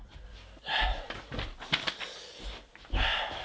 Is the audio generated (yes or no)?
no